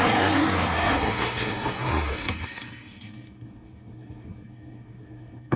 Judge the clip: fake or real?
fake